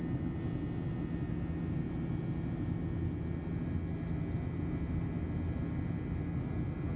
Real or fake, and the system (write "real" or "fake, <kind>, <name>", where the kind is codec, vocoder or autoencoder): real